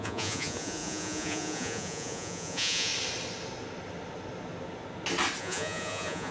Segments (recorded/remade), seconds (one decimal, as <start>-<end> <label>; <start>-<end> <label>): 0.0-2.9 remade; 2.9-5.4 recorded; 5.4-6.3 remade